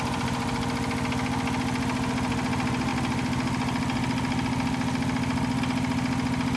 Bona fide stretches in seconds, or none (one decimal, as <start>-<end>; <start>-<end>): 0.0-6.6